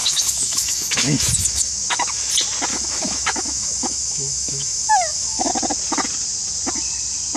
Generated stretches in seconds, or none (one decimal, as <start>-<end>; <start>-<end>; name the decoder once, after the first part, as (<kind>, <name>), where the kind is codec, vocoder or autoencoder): 0.0-2.3 (autoencoder, DAC-VAE); 2.7-5.5